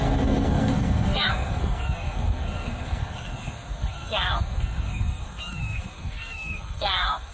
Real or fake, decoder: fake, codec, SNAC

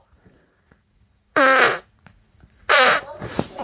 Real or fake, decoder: fake, vocoder, Vocos